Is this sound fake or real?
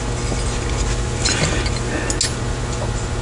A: real